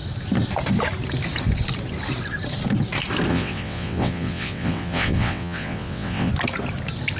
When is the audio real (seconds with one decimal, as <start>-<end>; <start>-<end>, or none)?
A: 0.0-3.3; 6.3-7.2